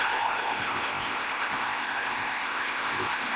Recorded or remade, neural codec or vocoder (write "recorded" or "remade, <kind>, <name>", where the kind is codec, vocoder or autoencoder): remade, codec, ZipCodec